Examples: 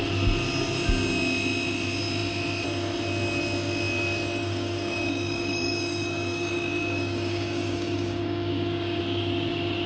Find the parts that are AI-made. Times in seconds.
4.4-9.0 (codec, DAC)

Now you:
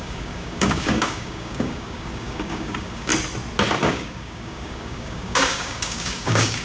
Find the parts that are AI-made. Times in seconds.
0.0-3.1 (codec, DAC); 3.8-6.6

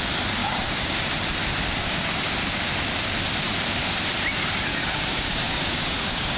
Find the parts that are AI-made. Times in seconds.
0.4-1.0 (codec, DAC); 1.8-2.3; 4.7-6.4

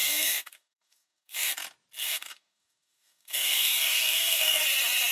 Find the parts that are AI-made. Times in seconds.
0.0-1.5 (codec, DAC); 2.0-4.6

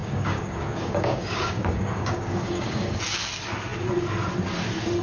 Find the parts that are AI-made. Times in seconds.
0.0-3.0 (codec, DAC)